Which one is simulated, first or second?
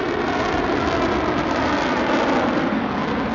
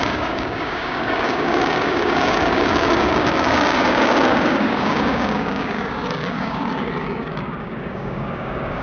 second